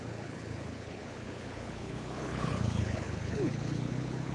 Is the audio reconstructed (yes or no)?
yes